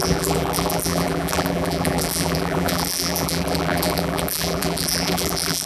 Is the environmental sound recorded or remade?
remade